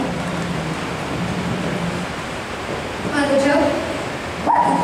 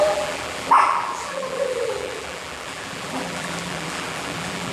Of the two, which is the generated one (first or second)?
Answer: second